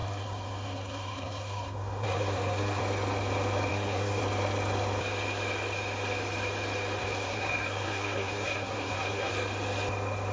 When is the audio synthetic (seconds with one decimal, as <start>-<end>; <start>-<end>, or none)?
0.0-2.8; 3.7-4.2; 7.0-9.3